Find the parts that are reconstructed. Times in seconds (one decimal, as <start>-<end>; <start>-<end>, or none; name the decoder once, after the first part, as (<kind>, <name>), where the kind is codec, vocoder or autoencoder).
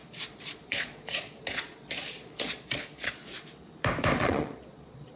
0.0-3.2 (vocoder, Vocos); 4.2-5.2